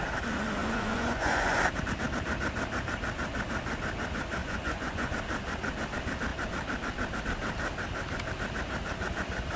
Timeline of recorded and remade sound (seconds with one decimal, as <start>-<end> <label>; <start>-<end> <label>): 0.0-0.6 recorded; 0.6-1.6 remade; 1.6-4.4 recorded; 4.4-5.1 remade; 5.1-9.6 recorded

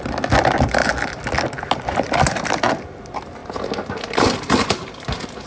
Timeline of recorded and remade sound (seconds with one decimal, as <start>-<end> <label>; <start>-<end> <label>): 0.0-5.5 recorded

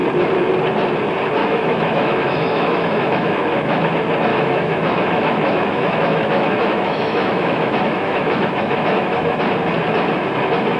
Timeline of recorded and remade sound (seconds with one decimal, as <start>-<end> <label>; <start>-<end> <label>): 0.0-1.4 recorded; 1.4-3.9 remade; 3.9-4.3 recorded; 4.3-9.4 remade; 9.4-10.8 recorded

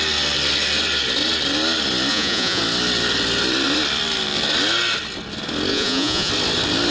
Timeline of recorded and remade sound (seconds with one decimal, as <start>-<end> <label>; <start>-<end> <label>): 0.0-2.1 recorded; 2.1-2.6 remade; 2.6-5.7 recorded; 5.7-6.3 remade; 6.3-6.9 recorded

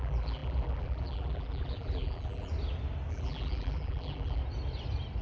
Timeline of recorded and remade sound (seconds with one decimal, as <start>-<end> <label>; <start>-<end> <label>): 0.0-2.5 remade; 2.5-3.1 recorded; 3.1-4.4 remade; 4.4-5.2 recorded

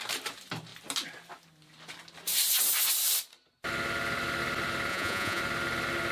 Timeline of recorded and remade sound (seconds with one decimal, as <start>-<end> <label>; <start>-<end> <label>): 0.0-4.9 recorded; 4.9-5.4 remade; 5.4-6.1 recorded